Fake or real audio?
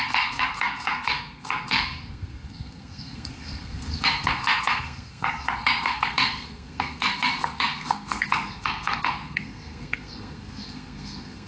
fake